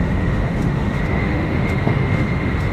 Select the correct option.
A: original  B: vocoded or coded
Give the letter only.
B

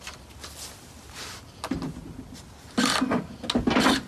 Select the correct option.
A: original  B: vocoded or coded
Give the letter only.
A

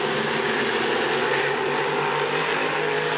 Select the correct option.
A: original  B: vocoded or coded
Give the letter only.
A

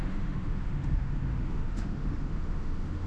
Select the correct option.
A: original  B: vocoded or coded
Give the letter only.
B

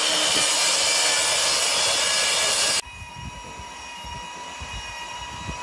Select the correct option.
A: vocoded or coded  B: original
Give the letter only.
B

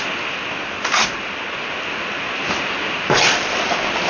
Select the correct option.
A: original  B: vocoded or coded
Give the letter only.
A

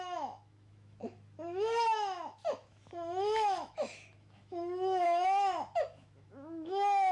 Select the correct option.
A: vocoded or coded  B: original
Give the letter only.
A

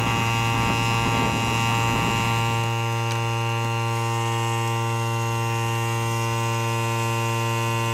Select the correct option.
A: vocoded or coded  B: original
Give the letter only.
B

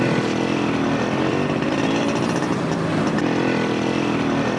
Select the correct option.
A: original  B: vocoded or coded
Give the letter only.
A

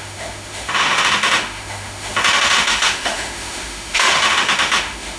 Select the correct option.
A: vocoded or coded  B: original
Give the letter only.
A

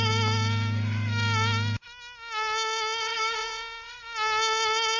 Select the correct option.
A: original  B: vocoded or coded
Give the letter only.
B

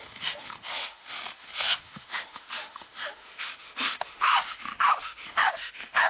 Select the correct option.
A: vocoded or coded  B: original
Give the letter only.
A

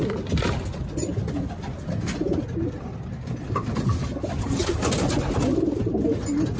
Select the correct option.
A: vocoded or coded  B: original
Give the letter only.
B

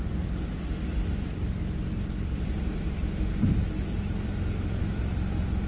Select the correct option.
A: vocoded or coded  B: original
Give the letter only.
B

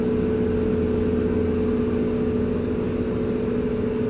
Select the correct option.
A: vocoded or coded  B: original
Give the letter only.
B